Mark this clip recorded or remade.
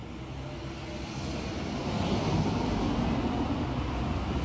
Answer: recorded